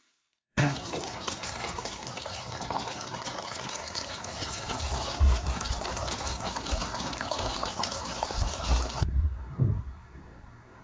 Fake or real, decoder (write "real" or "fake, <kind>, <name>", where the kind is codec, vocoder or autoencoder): fake, codec, SNAC